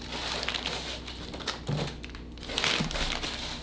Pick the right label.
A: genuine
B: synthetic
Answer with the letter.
A